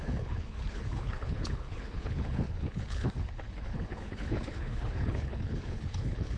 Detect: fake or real fake